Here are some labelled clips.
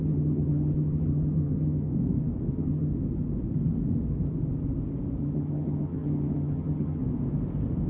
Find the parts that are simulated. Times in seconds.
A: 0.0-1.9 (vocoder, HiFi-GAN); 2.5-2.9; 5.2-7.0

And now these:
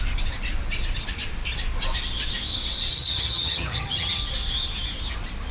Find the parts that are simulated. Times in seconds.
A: 2.9-4.2 (vocoder, HiFi-GAN)

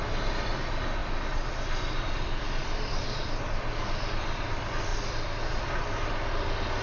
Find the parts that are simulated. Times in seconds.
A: none

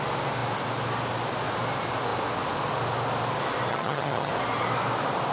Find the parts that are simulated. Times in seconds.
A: 3.7-4.3 (vocoder, HiFi-GAN)

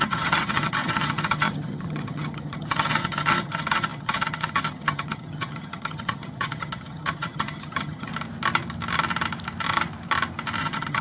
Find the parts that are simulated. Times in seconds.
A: 0.0-8.1 (vocoder, HiFi-GAN); 10.6-11.0

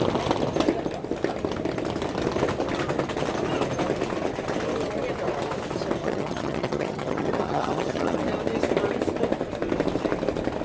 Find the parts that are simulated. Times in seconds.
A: 6.0-8.2 (vocoder, HiFi-GAN)

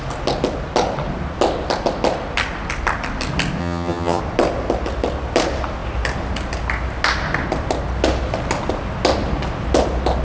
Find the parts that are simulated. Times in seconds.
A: 3.6-4.2 (vocoder, HiFi-GAN)